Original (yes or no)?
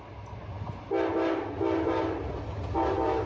yes